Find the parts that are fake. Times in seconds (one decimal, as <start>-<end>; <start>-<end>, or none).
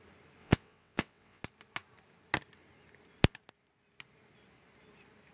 0.4-1.4